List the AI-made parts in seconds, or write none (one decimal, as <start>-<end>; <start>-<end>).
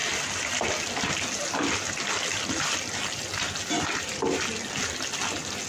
none